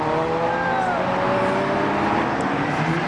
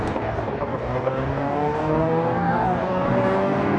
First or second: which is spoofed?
second